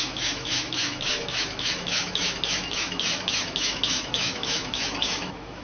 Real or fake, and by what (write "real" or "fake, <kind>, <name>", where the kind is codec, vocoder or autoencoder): fake, autoencoder, DAC-VAE